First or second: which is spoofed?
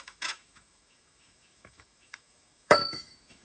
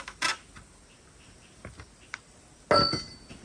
first